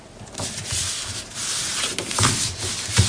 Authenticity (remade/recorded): recorded